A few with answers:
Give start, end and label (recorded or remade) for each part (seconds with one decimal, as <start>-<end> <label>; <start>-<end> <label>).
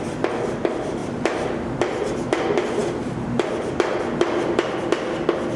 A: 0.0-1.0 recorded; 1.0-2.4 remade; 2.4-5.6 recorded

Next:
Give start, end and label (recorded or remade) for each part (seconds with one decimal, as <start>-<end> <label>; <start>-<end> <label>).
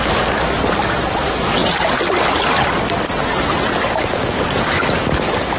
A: 0.0-5.6 recorded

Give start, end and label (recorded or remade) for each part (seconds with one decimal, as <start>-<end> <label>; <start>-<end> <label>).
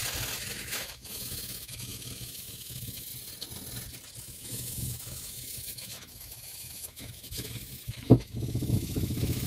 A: 0.0-0.5 recorded; 0.5-3.1 remade; 3.1-4.2 recorded; 4.2-9.5 remade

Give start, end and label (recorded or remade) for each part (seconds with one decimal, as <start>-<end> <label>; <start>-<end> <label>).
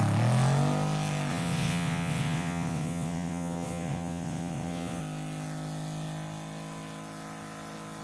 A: 0.0-1.3 recorded; 1.3-5.0 remade; 5.0-8.0 recorded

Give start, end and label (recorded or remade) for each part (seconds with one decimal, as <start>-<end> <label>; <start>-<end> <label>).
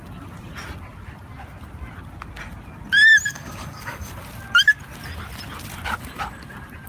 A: 0.0-3.3 recorded; 3.3-4.1 remade; 4.1-6.9 recorded